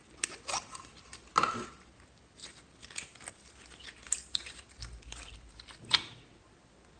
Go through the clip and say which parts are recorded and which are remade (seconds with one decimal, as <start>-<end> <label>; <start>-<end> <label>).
0.0-7.0 recorded